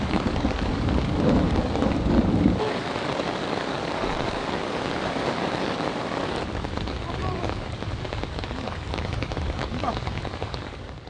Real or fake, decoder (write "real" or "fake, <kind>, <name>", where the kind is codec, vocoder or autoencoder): fake, codec, DAC